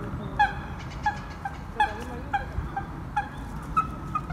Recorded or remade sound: recorded